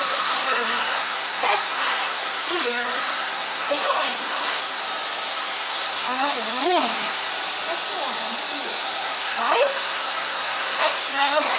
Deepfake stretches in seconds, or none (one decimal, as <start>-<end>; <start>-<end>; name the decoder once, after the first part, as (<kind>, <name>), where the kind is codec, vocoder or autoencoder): 0.0-4.8 (codec, SNAC); 5.3-7.3; 8.8-11.6